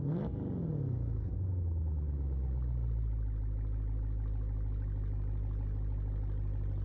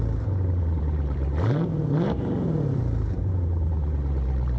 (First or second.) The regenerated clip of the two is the second